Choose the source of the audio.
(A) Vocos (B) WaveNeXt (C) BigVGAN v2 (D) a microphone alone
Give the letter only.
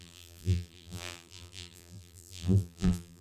C